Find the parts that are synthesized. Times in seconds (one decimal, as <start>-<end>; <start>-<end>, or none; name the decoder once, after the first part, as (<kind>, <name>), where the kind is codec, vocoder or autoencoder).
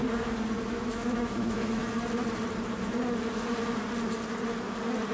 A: 0.7-1.8 (autoencoder, DAC-VAE)